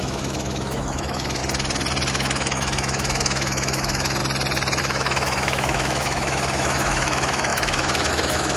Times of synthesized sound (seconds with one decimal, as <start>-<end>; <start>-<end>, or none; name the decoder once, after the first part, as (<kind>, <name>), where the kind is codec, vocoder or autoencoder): 0.0-1.4 (autoencoder, DAC-VAE); 2.1-4.2; 4.8-8.6